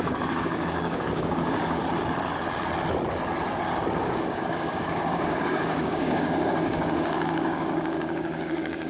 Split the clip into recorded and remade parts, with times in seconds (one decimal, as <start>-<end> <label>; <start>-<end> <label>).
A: 0.0-1.8 remade; 1.8-4.0 recorded; 4.0-8.9 remade